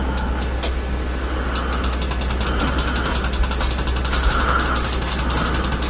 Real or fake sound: real